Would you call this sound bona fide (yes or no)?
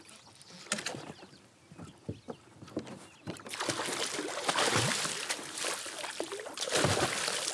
yes